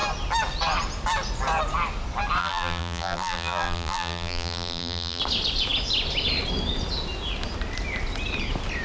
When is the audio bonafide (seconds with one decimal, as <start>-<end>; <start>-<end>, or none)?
0.0-2.4; 5.2-8.8

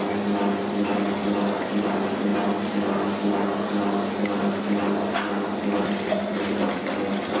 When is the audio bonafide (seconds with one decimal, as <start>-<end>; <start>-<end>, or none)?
0.0-7.4